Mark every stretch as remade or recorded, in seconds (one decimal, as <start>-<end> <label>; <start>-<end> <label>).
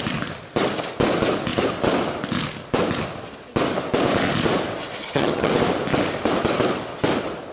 0.0-5.0 recorded; 5.0-5.5 remade; 5.5-7.5 recorded